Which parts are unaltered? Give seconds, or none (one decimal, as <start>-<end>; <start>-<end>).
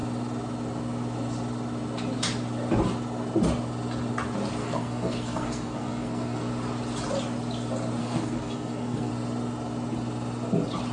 0.0-4.6; 6.5-8.0; 9.1-10.9